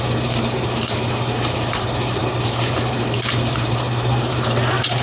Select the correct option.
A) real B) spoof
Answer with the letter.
B